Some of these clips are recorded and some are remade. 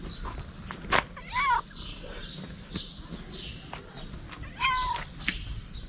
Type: recorded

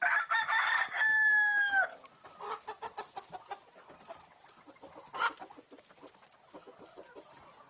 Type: recorded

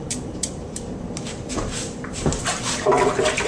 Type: remade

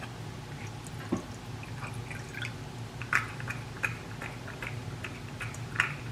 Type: recorded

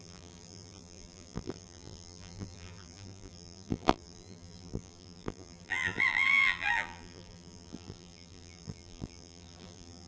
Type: remade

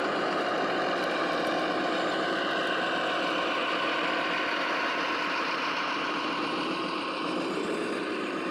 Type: remade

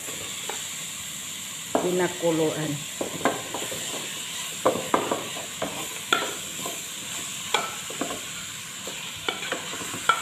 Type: recorded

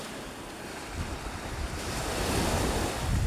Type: recorded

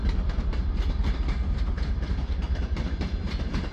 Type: remade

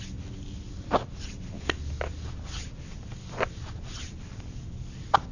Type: recorded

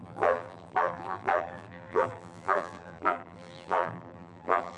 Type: remade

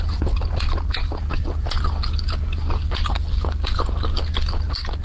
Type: recorded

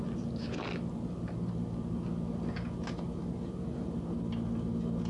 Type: recorded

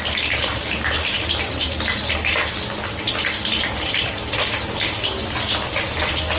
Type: recorded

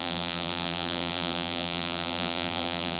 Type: remade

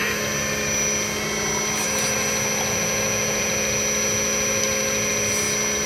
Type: recorded